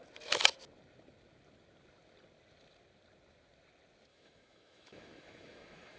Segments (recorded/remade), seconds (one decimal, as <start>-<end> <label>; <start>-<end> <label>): 0.0-4.1 recorded; 4.1-6.0 remade